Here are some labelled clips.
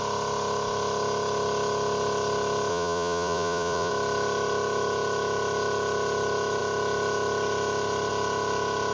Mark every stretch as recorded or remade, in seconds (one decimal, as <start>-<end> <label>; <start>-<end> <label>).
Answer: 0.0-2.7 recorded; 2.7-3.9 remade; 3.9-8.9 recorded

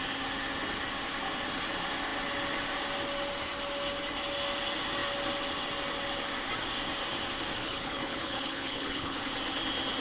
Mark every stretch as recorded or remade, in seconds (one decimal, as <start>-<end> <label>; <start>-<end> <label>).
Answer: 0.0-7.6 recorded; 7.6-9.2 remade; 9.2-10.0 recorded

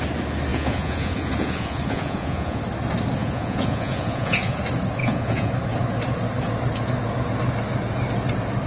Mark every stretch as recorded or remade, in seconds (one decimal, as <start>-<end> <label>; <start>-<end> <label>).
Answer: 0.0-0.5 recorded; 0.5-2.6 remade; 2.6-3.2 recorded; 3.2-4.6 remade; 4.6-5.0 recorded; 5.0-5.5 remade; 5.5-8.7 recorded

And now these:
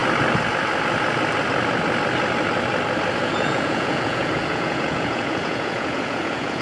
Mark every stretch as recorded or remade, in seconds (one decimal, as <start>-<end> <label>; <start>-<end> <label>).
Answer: 0.0-3.2 recorded; 3.2-6.6 remade

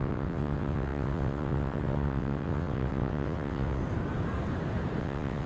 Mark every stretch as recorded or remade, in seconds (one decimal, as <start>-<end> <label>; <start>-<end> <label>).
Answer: 0.0-3.8 remade; 3.8-5.0 recorded; 5.0-5.5 remade

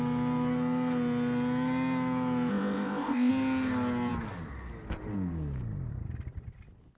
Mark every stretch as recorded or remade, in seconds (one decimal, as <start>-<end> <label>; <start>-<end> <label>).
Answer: 0.0-2.5 recorded; 2.5-3.3 remade; 3.3-7.0 recorded